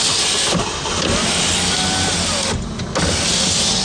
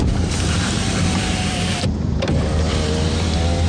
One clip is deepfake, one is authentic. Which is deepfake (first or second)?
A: second